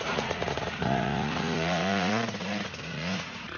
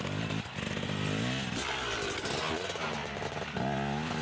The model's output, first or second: first